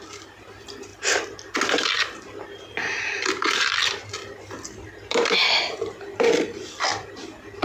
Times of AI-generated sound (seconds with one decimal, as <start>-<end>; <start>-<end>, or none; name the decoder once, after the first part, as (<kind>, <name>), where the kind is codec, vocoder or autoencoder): 0.0-0.9 (vocoder, BigVGAN v2); 3.0-4.1; 5.7-7.6